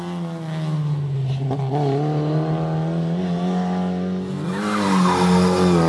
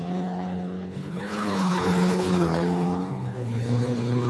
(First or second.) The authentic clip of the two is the first